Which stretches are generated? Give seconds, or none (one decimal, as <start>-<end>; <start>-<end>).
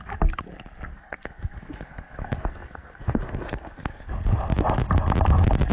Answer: 0.9-4.1